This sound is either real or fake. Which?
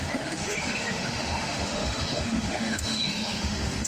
fake